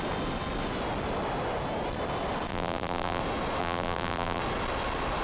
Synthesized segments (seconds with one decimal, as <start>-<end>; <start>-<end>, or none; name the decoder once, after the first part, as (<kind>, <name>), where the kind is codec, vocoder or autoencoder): 2.5-3.2 (vocoder, BigVGAN v2); 3.6-4.4